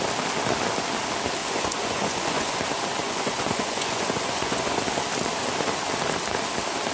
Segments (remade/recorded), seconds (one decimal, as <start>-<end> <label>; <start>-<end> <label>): 0.0-1.4 recorded; 1.4-2.6 remade; 2.6-3.0 recorded; 3.0-4.8 remade; 4.8-6.9 recorded